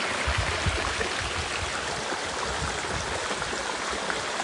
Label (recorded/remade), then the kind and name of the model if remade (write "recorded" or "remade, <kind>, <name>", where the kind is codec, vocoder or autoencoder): recorded